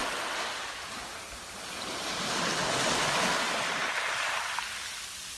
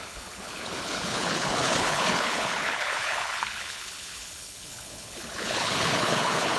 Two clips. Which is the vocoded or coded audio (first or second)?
second